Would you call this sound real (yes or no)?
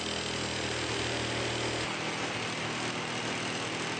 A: yes